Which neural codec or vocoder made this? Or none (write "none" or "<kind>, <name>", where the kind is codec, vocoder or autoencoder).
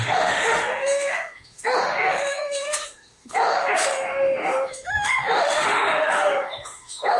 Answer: autoencoder, DAC-VAE